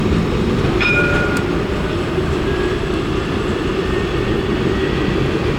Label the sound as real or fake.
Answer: fake